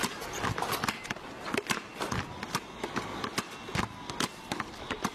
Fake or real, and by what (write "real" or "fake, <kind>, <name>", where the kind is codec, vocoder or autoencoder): real